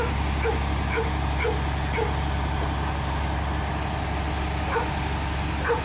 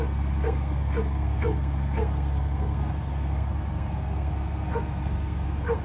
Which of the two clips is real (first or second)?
first